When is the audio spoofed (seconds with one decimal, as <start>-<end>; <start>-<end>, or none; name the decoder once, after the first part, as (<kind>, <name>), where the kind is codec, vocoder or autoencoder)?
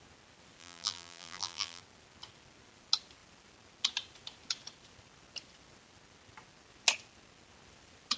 0.6-1.8 (vocoder, BigVGAN v2)